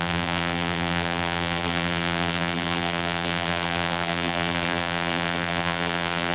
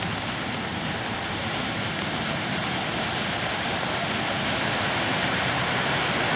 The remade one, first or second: first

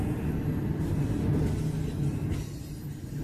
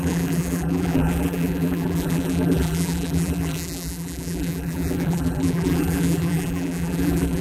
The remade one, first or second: second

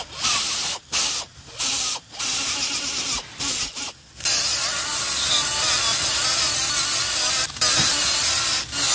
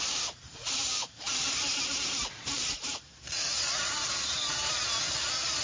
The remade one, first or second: second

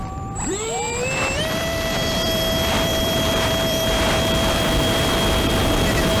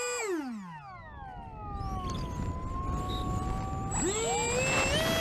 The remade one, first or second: first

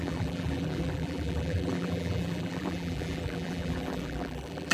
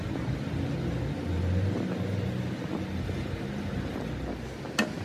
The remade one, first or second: first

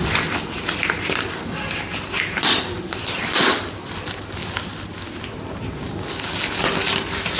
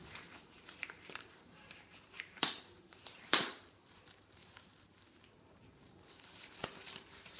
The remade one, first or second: second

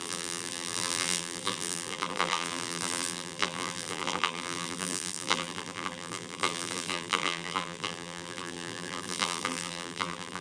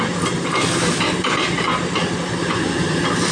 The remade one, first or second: first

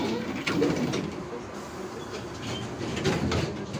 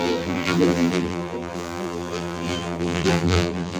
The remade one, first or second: second